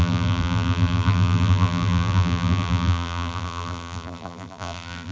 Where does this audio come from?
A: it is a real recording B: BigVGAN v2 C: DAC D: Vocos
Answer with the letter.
B